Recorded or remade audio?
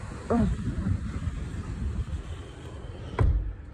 remade